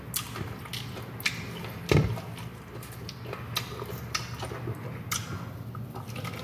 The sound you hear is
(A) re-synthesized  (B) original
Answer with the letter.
B